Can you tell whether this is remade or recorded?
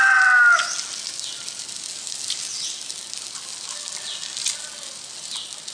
recorded